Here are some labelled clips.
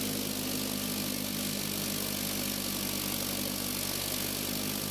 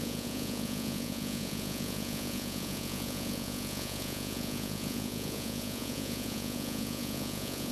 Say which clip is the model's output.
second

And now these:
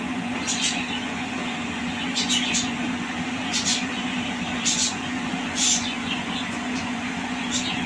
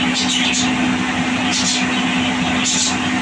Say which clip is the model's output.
first